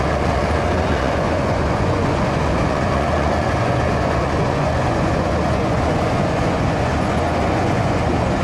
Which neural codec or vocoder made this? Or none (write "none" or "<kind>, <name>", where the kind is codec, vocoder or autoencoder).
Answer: vocoder, Vocos